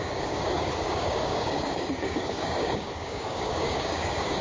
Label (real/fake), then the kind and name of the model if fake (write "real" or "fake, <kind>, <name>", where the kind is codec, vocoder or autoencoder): fake, codec, DAC